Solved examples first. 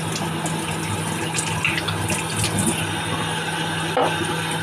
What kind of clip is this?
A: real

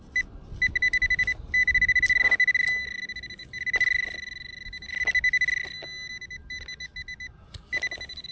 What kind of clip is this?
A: real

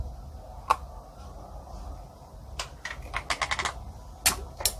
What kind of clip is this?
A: real